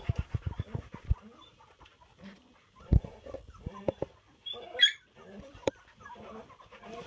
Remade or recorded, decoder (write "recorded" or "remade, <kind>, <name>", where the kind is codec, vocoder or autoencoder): remade, vocoder, BigVGAN v2